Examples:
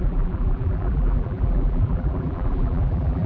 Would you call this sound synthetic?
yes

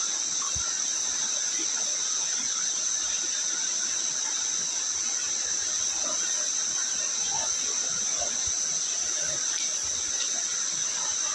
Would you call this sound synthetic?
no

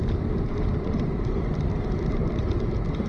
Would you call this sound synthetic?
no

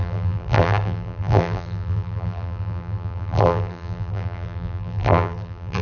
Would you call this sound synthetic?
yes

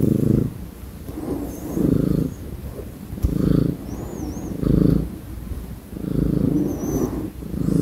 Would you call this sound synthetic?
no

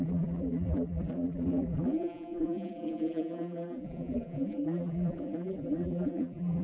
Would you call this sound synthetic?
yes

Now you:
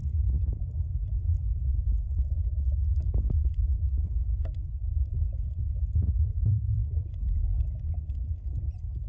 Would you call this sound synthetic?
yes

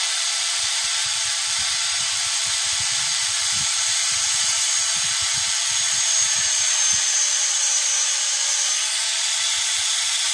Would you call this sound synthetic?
yes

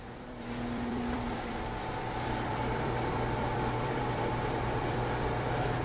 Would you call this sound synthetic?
yes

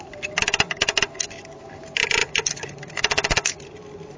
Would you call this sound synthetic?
yes